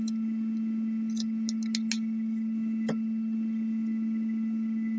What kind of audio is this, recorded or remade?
recorded